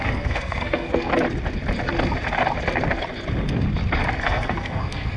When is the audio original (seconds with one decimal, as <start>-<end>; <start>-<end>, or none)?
1.1-4.2